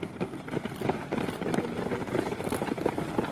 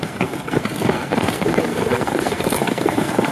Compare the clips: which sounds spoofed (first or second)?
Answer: second